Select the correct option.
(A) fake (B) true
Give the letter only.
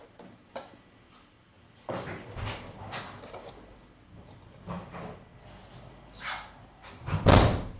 B